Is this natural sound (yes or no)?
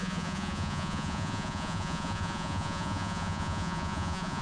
no